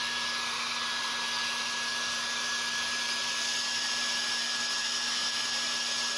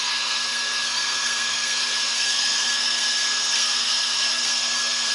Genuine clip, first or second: first